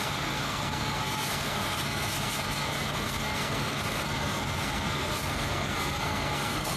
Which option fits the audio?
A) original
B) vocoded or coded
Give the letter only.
B